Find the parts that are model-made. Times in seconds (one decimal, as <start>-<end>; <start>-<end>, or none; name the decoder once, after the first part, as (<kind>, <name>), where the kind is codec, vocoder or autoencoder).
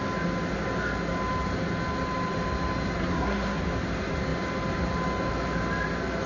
3.0-3.6 (codec, SNAC)